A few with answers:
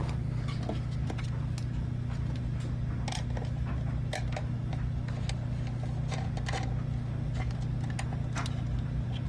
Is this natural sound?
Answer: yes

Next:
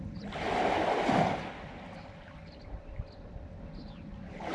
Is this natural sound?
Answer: yes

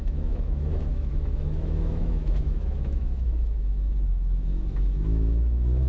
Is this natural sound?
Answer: no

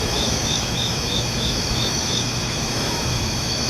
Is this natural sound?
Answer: no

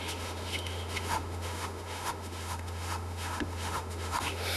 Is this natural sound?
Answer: no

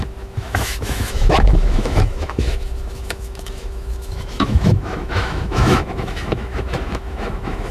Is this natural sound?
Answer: no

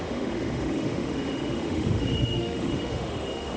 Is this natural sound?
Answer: no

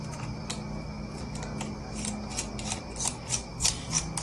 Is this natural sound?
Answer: yes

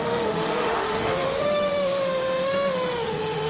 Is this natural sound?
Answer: no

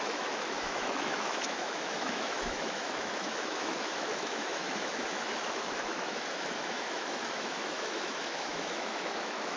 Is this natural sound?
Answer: no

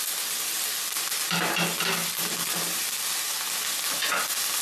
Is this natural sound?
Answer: yes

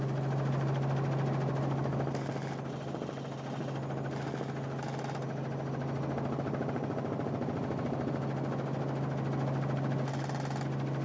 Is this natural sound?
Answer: yes